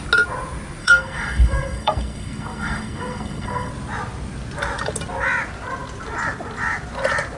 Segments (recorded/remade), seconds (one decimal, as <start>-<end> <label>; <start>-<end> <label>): 0.0-0.8 recorded; 0.8-3.7 remade; 3.7-7.4 recorded